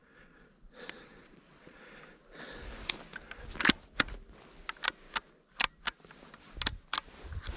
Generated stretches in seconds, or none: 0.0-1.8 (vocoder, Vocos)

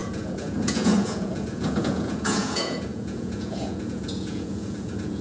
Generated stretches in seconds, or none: 0.0-5.2 (vocoder, Vocos)

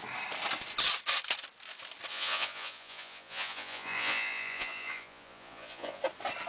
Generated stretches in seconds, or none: 2.1-6.0 (vocoder, Vocos)

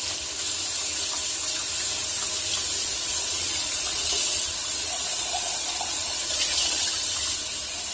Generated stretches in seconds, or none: 2.8-6.9 (vocoder, Vocos)

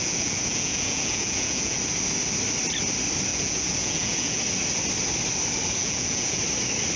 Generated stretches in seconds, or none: 0.0-1.8 (vocoder, Vocos); 3.3-4.4; 5.8-6.4

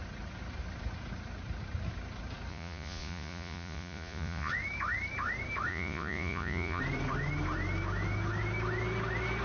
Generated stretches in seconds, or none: 2.5-4.5 (vocoder, Vocos); 5.7-6.8